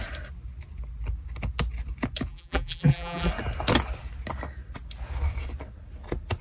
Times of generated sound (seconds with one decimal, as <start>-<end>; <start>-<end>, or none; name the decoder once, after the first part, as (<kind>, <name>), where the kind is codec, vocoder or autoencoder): 2.3-3.3 (vocoder, BigVGAN v2)